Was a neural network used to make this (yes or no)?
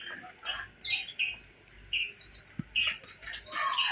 no